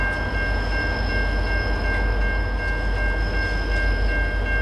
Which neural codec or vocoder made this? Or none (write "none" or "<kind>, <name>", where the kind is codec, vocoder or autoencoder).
none